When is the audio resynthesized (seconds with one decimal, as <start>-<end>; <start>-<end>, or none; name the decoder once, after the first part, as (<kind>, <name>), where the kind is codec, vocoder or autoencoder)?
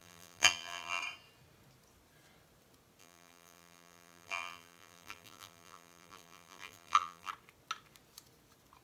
0.0-1.0 (vocoder, BigVGAN v2); 3.0-7.3